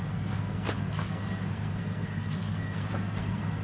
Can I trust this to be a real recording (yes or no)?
no